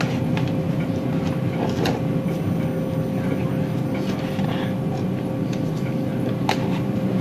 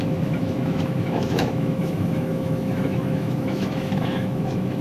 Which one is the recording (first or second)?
first